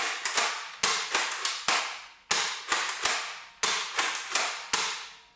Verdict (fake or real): real